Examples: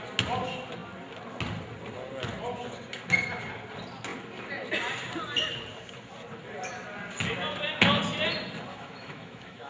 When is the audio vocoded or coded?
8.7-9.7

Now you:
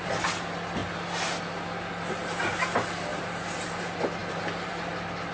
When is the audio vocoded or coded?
3.1-3.8; 4.2-4.7

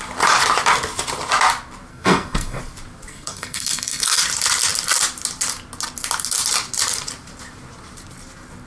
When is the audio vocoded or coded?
1.9-2.6; 3.1-4.2

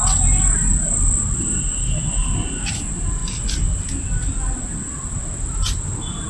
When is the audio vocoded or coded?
none

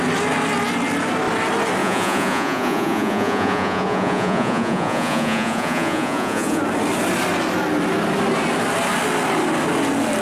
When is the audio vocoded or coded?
1.8-6.6

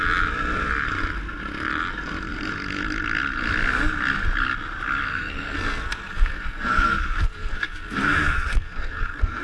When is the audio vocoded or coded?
5.1-9.4